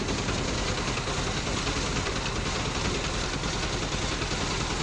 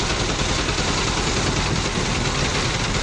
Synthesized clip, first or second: second